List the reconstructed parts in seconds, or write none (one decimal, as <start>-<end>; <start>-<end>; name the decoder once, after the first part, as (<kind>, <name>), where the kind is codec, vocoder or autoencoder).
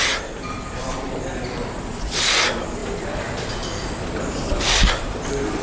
none